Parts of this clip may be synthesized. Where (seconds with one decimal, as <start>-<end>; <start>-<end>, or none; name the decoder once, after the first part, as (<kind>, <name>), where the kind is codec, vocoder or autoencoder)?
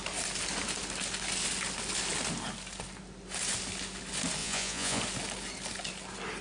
4.4-5.0 (vocoder, Vocos)